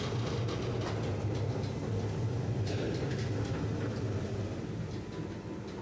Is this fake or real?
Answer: real